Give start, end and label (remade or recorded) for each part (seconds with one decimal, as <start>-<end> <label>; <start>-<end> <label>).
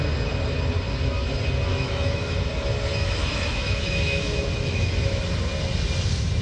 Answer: 0.0-1.7 recorded; 1.7-2.5 remade; 2.5-2.9 recorded; 2.9-5.2 remade; 5.2-6.4 recorded